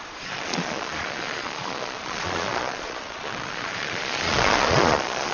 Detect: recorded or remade remade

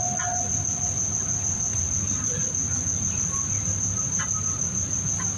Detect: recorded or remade recorded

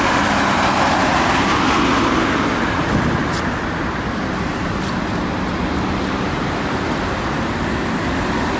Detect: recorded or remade recorded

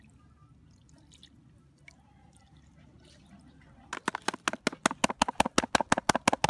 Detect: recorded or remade recorded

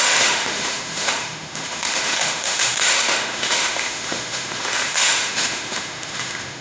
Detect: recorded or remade remade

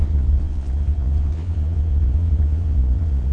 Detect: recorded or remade remade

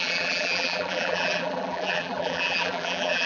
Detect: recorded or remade remade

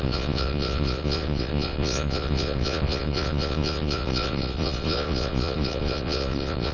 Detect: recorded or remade remade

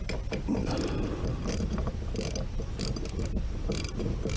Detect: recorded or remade recorded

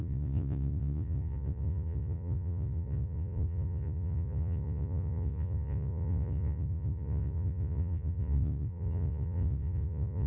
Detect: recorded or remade remade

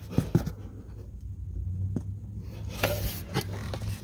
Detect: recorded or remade recorded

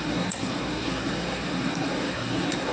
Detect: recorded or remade remade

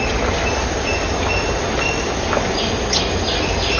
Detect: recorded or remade recorded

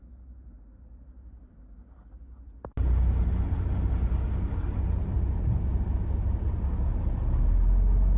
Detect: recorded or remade recorded